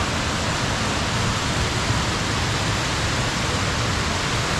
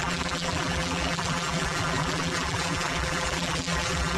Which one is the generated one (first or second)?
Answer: second